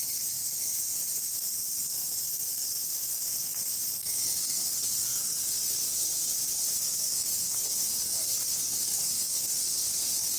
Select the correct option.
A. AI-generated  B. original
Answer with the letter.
A